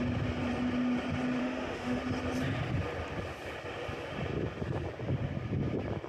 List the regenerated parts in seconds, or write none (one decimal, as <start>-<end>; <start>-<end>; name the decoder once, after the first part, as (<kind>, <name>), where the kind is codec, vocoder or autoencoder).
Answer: 1.4-2.0 (autoencoder, DAC-VAE)